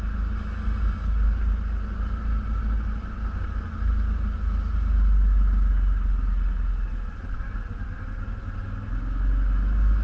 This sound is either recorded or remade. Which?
recorded